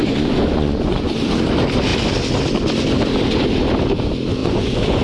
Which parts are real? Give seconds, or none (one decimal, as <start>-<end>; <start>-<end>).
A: 1.2-4.4